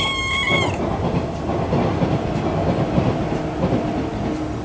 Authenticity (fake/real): real